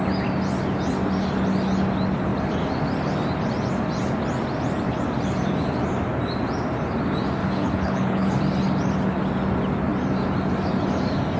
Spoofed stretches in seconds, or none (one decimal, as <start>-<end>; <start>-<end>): 7.4-8.4